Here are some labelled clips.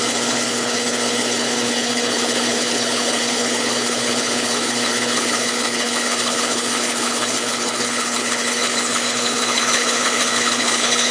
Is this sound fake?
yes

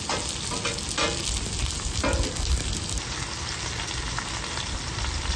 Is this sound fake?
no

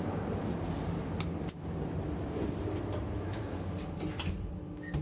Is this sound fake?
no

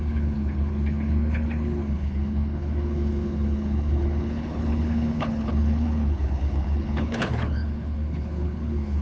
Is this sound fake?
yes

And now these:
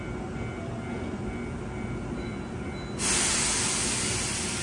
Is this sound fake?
no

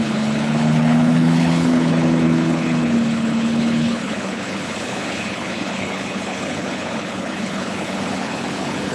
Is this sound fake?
yes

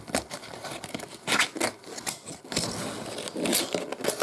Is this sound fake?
no